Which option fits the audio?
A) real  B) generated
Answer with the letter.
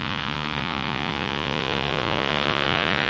B